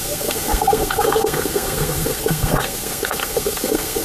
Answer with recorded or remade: remade